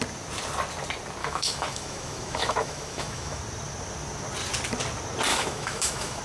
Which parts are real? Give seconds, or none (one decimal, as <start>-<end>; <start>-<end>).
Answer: 0.0-1.2; 3.4-5.3